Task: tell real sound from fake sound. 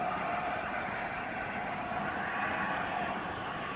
real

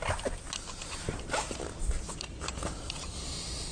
real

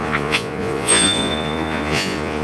fake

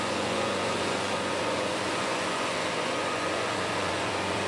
fake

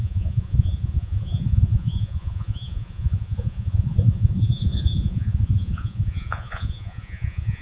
fake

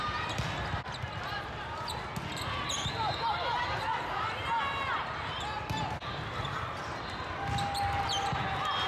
real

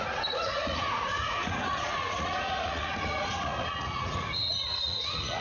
fake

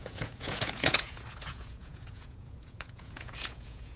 fake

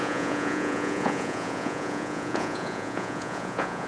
fake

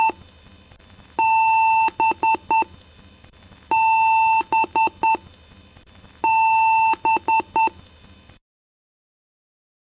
real